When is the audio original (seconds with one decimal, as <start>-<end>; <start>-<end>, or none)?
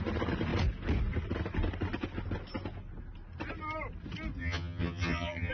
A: 0.0-4.4